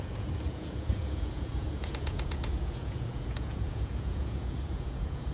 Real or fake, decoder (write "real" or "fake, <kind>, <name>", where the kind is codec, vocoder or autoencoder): fake, vocoder, Vocos